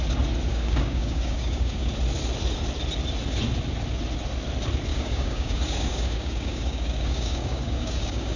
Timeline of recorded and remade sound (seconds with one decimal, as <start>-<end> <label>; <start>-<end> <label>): 0.0-0.5 recorded; 0.5-1.9 remade; 1.9-4.9 recorded; 4.9-8.4 remade